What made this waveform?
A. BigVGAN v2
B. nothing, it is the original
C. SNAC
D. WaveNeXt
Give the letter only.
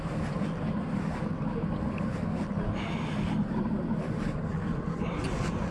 B